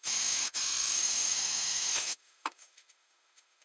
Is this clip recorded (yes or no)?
no